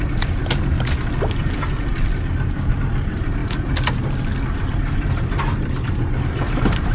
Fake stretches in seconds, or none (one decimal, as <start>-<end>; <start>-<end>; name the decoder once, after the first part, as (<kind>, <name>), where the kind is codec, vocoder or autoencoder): 0.0-0.4 (vocoder, BigVGAN v2); 2.7-3.4; 4.7-6.9